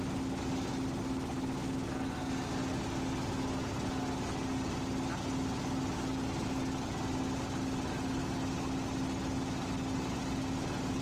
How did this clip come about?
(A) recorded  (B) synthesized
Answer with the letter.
A